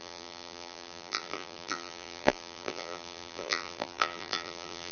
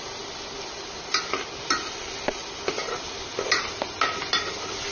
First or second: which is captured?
second